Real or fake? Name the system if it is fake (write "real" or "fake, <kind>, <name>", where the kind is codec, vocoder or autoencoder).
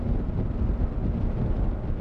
real